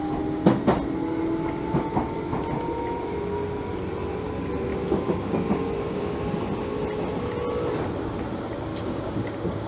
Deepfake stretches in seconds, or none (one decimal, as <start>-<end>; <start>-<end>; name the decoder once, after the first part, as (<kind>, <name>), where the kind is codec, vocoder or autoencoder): 4.7-6.3 (codec, DAC); 8.7-9.7